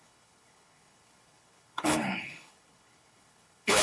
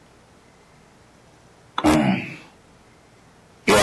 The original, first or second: second